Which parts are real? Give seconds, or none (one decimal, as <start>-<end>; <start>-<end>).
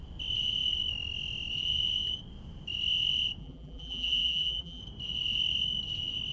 0.0-3.4; 4.8-6.3